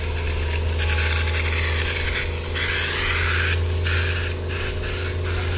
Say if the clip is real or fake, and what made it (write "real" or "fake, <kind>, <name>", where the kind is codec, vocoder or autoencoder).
real